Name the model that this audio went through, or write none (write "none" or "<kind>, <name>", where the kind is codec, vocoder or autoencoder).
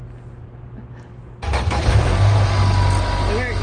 none